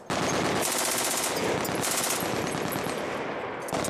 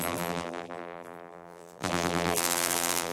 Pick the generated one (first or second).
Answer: second